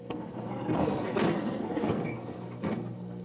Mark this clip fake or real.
fake